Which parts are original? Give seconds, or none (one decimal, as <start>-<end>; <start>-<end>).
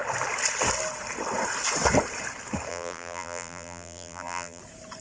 0.0-2.7; 4.6-5.0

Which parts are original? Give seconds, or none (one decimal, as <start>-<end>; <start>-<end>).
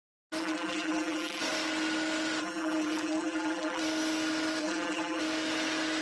0.0-0.4; 1.4-2.4; 3.8-4.6; 5.2-6.0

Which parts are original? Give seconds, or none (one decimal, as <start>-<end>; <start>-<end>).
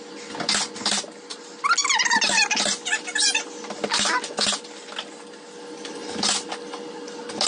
0.0-7.5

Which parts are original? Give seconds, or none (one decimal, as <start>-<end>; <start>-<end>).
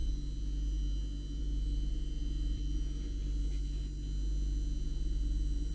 0.0-5.7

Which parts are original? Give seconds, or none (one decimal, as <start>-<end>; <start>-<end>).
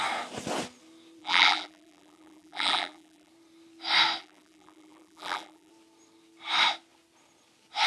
0.0-1.2; 3.3-4.2; 5.7-7.9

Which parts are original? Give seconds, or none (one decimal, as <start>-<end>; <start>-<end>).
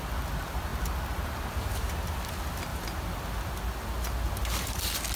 0.0-5.2